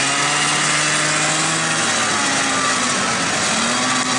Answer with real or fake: real